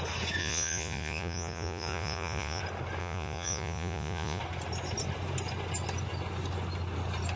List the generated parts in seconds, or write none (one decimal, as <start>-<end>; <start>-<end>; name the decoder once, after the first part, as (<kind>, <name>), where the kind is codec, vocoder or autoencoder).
0.4-2.6 (vocoder, Vocos); 3.0-4.4